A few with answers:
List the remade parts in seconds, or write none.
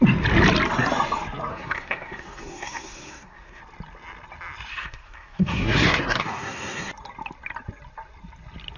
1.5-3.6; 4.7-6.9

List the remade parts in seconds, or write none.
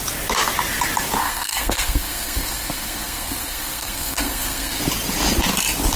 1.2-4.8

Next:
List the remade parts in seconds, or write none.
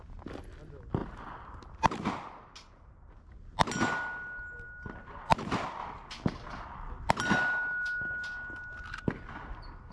none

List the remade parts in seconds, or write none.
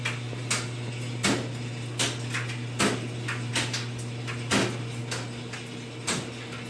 none